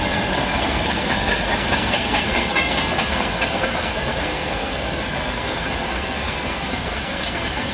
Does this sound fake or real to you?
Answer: fake